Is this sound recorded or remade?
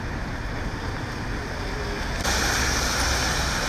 recorded